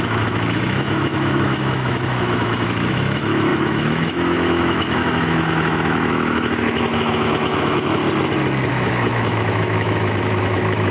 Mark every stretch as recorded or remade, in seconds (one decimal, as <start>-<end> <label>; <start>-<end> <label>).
0.0-8.0 remade; 8.0-8.7 recorded; 8.7-10.9 remade